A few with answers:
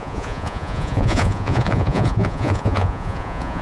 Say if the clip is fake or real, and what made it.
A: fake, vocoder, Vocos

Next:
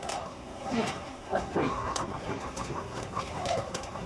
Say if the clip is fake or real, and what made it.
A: fake, codec, SNAC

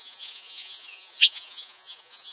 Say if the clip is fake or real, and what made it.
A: fake, vocoder, Vocos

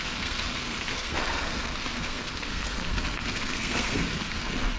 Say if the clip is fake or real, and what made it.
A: fake, codec, SNAC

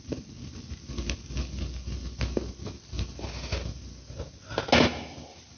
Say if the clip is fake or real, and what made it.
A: real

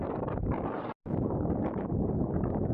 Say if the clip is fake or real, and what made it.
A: real